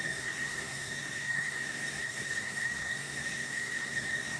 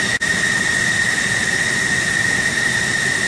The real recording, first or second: second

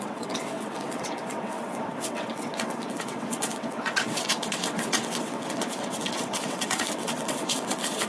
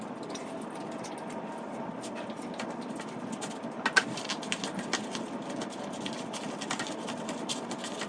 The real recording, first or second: second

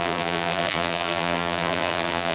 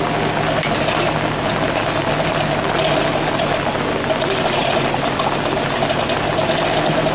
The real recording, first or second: second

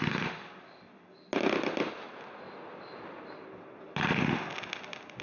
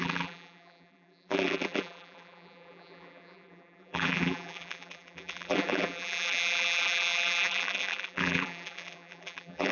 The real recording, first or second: first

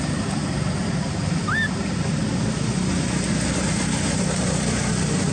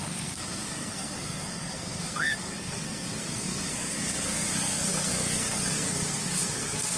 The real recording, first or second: first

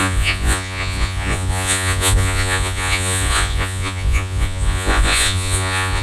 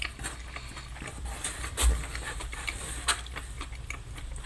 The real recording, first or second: second